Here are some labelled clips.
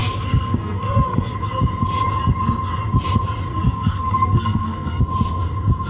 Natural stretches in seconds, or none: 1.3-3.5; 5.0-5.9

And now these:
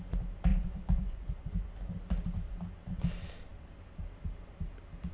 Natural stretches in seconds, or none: 0.0-0.5; 1.5-5.1